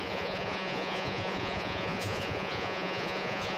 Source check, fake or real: fake